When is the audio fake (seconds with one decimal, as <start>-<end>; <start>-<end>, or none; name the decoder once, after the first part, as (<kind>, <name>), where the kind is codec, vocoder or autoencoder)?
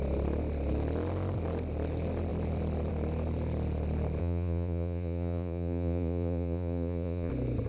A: 4.2-7.3 (vocoder, Vocos)